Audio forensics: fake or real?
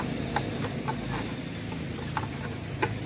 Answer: real